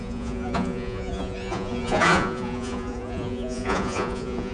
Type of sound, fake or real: fake